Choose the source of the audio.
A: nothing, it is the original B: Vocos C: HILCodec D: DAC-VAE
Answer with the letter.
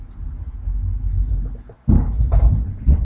A